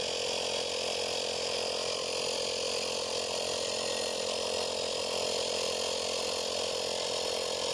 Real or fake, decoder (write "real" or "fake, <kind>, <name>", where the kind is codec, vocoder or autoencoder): real